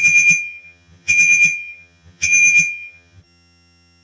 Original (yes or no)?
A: no